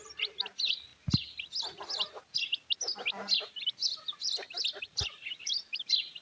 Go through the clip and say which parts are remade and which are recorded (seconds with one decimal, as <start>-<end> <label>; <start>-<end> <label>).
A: 0.0-0.9 remade; 0.9-3.4 recorded; 3.4-6.2 remade